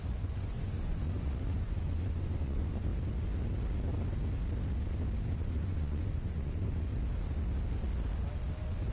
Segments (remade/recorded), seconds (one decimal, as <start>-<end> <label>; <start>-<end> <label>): 0.0-2.9 remade; 2.9-5.3 recorded; 5.3-6.9 remade; 6.9-8.9 recorded

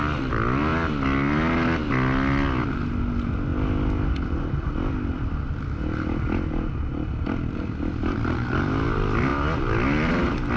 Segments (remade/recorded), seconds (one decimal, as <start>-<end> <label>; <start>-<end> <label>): 0.0-10.6 recorded

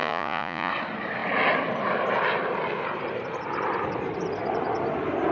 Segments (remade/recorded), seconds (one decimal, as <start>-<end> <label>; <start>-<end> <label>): 0.0-0.7 remade; 0.7-5.3 recorded

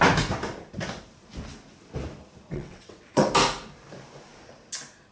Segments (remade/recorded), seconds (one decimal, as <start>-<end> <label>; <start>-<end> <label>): 0.0-2.5 recorded; 2.5-3.3 remade; 3.3-5.1 recorded

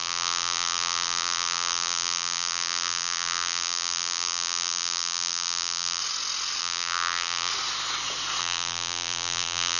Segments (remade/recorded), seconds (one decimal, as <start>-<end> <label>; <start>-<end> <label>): 0.0-6.0 remade; 6.0-6.6 recorded; 6.6-7.5 remade; 7.5-8.4 recorded; 8.4-9.8 remade

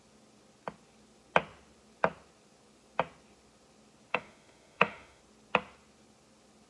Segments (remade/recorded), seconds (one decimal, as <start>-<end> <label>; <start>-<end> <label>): 0.0-4.1 recorded; 4.1-5.2 remade; 5.2-6.7 recorded